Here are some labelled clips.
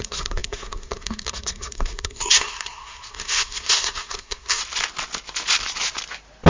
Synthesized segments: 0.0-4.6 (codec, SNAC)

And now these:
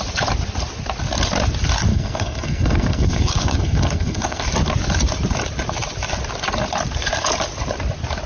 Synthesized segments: 1.9-4.4 (codec, SNAC)

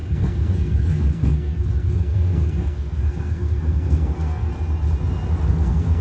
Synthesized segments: 0.0-4.5 (codec, SNAC); 5.5-6.0